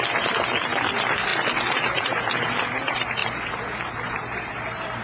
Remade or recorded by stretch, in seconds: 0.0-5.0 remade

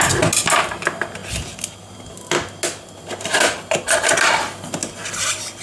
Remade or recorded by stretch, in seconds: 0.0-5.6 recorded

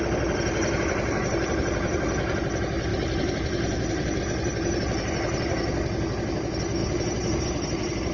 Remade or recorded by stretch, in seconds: 0.0-2.9 recorded; 2.9-4.2 remade; 4.2-6.8 recorded; 6.8-7.4 remade; 7.4-8.1 recorded

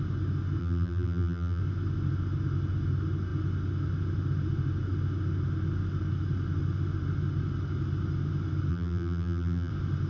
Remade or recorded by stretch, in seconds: 0.0-0.6 recorded; 0.6-1.6 remade; 1.6-8.7 recorded; 8.7-9.7 remade; 9.7-10.1 recorded

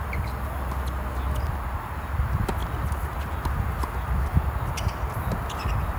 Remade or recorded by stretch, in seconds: 0.0-6.0 recorded

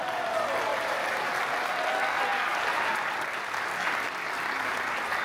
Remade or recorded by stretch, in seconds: 0.0-0.7 recorded; 0.7-1.3 remade; 1.3-2.3 recorded; 2.3-3.7 remade; 3.7-5.2 recorded

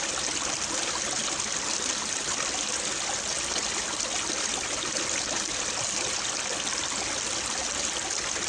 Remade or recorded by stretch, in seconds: 0.0-8.5 recorded